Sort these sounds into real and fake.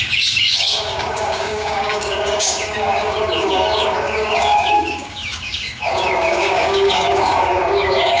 fake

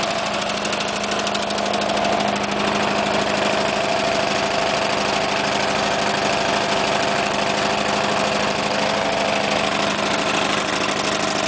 real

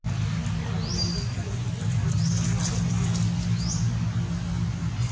real